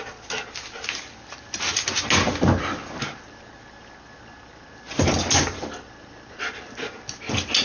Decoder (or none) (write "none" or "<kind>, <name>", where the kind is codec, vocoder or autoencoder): none